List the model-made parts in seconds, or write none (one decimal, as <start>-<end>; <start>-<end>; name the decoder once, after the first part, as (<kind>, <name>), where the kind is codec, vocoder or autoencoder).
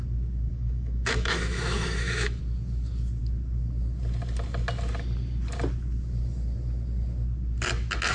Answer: 0.5-2.4 (autoencoder, DAC-VAE)